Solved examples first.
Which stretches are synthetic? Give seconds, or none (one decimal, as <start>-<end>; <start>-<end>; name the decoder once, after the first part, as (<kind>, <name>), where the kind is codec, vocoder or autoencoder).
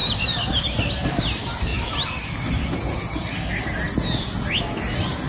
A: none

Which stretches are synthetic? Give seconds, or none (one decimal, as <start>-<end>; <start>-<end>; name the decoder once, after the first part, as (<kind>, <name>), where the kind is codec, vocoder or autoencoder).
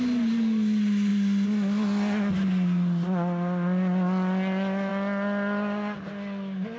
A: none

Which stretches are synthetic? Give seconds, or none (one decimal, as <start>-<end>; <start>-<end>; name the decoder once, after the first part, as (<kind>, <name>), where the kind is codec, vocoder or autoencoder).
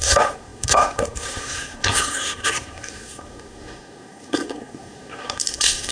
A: 0.0-5.9 (codec, SNAC)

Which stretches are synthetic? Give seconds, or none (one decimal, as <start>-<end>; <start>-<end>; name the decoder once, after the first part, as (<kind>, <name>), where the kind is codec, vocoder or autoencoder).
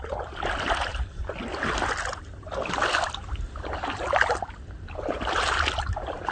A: none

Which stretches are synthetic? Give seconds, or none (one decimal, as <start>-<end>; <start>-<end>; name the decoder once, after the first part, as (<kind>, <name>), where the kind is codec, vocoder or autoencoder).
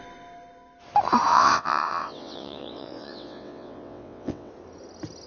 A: 1.3-4.5 (vocoder, WaveNeXt)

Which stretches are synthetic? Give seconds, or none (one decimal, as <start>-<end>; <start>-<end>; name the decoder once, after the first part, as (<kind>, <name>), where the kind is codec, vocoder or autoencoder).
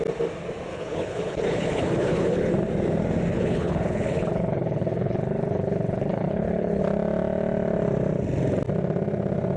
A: 0.7-2.5 (codec, HILCodec); 3.3-6.8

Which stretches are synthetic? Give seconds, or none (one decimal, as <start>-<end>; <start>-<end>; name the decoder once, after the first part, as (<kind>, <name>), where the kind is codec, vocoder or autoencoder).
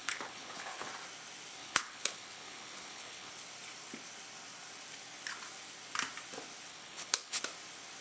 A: 0.0-0.9 (codec, HILCodec); 1.6-3.3; 6.7-7.4